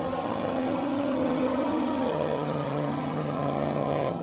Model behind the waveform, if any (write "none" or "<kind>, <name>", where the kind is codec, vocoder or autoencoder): vocoder, HiFi-GAN